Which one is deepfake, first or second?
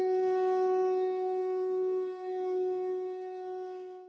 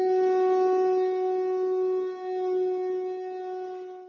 first